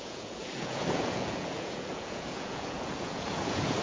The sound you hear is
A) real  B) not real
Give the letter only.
B